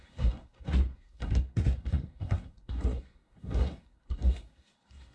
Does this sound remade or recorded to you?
remade